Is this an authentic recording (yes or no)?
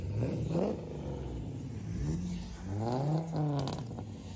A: yes